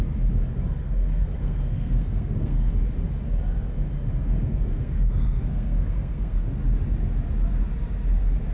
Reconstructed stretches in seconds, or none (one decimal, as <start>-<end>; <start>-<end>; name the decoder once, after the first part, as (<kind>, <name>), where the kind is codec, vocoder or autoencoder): 0.8-2.7 (codec, SNAC); 4.2-6.5